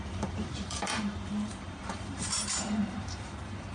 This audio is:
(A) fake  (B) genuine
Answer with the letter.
A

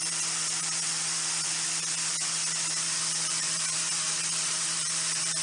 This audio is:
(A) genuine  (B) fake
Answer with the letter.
B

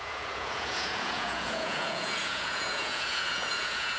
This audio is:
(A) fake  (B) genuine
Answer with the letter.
A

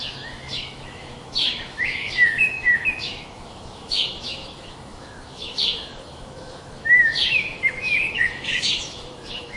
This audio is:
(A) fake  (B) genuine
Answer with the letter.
A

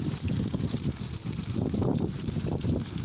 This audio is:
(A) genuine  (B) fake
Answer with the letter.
A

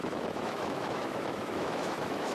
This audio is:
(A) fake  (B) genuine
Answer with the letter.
A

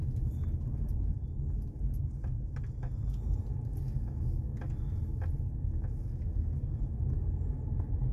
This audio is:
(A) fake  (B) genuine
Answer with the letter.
B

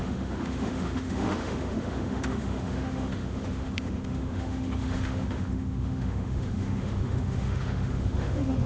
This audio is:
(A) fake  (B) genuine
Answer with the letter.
A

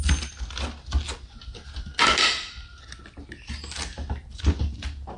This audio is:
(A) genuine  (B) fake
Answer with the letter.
A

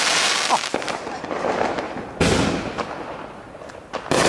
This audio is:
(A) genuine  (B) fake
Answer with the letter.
A